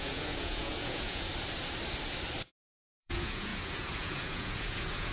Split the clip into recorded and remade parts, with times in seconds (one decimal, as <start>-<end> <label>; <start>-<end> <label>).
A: 0.0-1.3 remade; 1.3-3.0 recorded; 3.0-5.1 remade